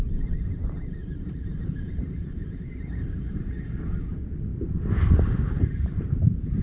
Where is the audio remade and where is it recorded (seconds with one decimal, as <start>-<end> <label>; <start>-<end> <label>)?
0.0-1.0 recorded; 1.0-3.4 remade; 3.4-4.5 recorded; 4.5-6.6 remade